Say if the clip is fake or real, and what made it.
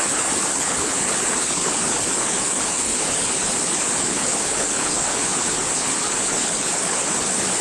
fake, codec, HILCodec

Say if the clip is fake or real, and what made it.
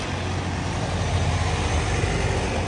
real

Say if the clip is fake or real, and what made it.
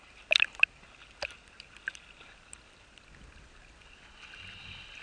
real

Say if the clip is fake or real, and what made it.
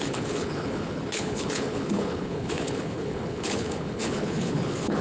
fake, codec, HILCodec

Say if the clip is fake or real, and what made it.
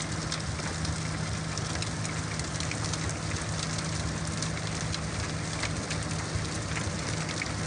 real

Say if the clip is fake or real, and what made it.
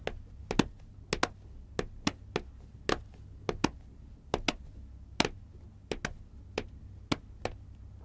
real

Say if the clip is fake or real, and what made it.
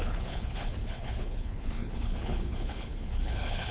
fake, codec, HILCodec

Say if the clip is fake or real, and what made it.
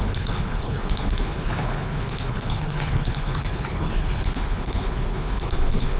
fake, codec, HILCodec